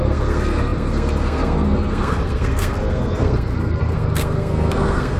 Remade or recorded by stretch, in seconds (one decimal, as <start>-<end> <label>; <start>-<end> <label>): 0.0-5.2 remade